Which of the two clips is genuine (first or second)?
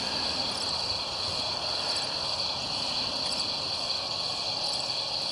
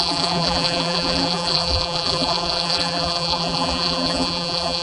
first